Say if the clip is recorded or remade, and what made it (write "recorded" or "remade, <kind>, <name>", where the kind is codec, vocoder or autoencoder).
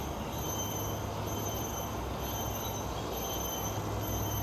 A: recorded